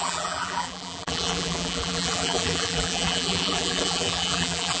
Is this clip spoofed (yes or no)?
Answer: yes